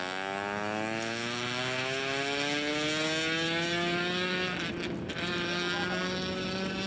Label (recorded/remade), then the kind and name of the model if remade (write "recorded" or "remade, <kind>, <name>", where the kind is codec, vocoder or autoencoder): recorded